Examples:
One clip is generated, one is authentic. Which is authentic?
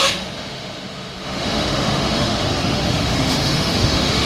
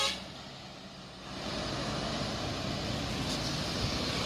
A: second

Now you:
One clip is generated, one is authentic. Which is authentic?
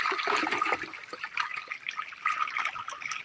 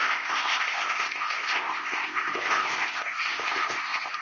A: first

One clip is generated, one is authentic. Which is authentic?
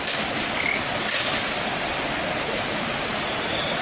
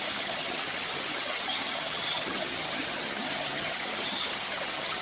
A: first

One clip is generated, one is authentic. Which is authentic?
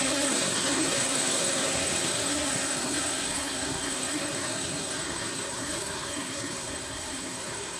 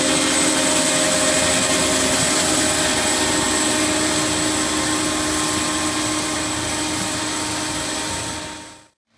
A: second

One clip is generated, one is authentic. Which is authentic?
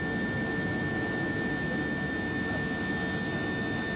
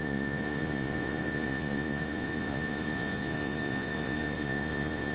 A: first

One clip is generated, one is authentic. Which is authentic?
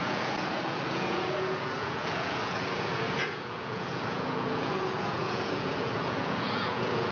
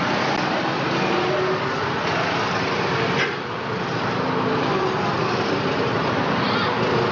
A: second